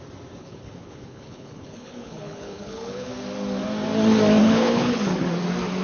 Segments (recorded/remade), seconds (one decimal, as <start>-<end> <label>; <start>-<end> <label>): 0.0-0.4 recorded; 0.4-3.1 remade; 3.1-4.4 recorded; 4.4-5.0 remade; 5.0-5.8 recorded